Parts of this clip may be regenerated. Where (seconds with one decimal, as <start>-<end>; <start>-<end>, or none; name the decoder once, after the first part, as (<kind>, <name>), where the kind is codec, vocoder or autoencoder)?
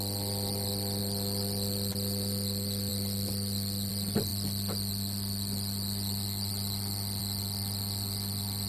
none